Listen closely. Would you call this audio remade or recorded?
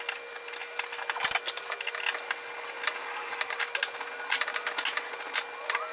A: recorded